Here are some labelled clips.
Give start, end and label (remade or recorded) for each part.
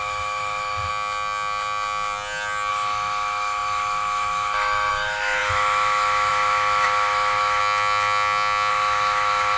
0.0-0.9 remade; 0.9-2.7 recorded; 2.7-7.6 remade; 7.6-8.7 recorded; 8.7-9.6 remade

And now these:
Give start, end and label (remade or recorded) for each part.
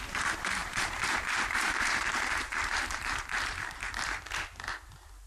0.0-0.6 recorded; 0.6-3.8 remade; 3.8-5.3 recorded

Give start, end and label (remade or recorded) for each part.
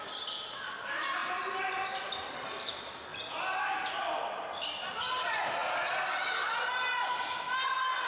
0.0-8.1 recorded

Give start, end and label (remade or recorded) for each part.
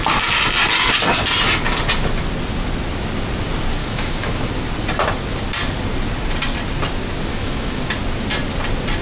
0.0-3.8 recorded; 3.8-4.5 remade; 4.5-7.3 recorded; 7.3-7.8 remade; 7.8-9.0 recorded